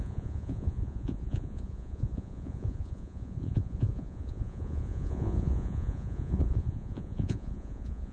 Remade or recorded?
remade